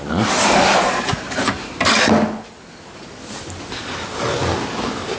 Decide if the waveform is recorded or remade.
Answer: recorded